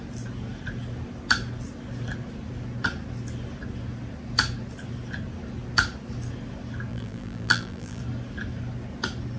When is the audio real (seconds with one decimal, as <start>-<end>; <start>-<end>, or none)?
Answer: 0.0-6.9; 8.0-9.4